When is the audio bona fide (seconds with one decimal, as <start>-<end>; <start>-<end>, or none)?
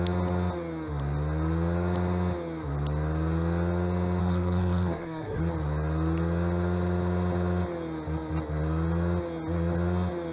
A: 0.0-4.2; 5.4-10.3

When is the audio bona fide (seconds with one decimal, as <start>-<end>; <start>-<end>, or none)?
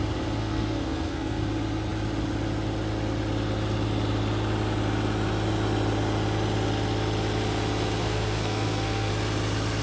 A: 0.0-0.4; 1.4-8.0; 9.1-9.8